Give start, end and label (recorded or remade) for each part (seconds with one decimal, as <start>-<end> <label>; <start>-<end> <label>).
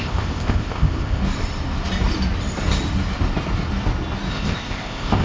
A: 0.0-1.2 remade; 1.2-4.3 recorded; 4.3-5.2 remade